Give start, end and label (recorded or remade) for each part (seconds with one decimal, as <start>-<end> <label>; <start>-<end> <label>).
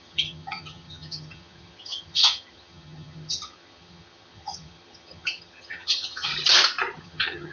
0.0-6.3 remade; 6.3-7.0 recorded; 7.0-7.5 remade